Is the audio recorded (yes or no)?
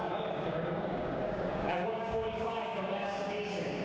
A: no